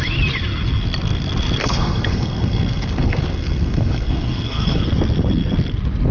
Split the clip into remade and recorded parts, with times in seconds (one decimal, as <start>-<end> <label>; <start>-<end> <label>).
0.0-1.6 recorded; 1.6-4.8 remade; 4.8-6.1 recorded